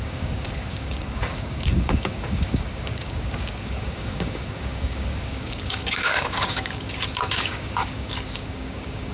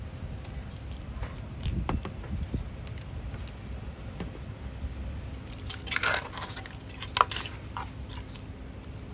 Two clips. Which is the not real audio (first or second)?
first